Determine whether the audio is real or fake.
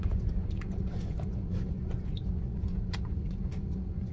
fake